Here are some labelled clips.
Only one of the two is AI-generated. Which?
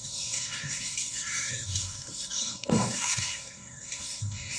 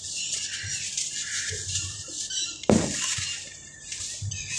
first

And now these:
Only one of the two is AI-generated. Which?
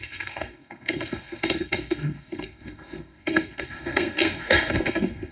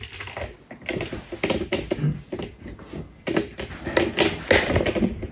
first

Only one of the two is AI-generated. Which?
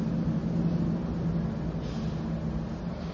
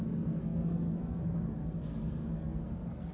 second